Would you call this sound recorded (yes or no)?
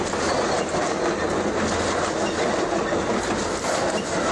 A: yes